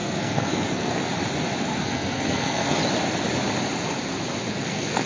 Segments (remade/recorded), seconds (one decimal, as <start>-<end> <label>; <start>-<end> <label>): 0.0-1.0 remade; 1.0-1.8 recorded; 1.8-2.8 remade; 2.8-4.5 recorded; 4.5-5.1 remade